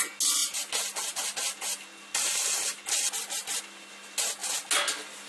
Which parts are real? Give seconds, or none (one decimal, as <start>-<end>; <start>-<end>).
0.0-5.3